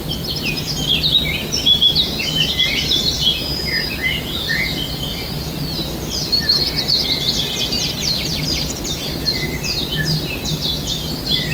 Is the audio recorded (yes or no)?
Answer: yes